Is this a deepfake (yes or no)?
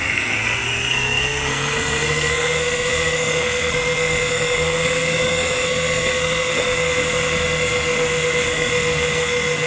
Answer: yes